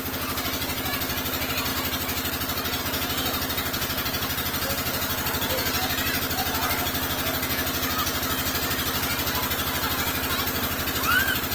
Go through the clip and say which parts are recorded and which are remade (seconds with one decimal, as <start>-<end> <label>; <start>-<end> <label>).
0.0-11.5 recorded